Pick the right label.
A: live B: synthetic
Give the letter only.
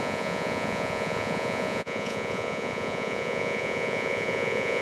B